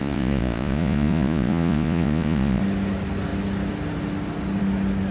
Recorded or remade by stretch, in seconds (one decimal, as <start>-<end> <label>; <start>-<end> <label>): 0.0-2.6 remade; 2.6-5.1 recorded